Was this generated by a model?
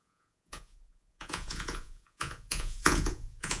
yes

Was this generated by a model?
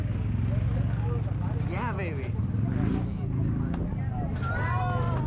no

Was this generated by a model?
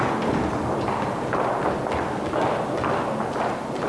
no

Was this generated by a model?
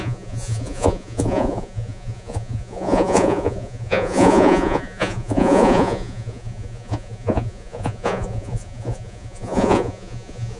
yes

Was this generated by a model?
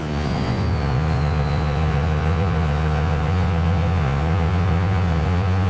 yes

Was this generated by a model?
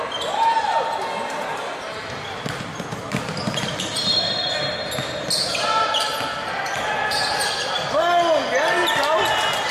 no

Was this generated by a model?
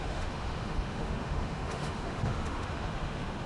yes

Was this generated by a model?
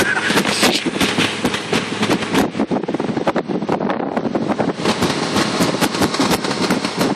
no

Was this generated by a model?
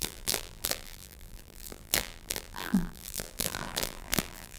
yes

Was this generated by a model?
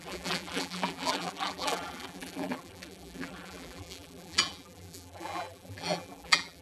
yes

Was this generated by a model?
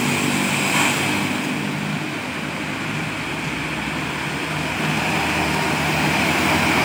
no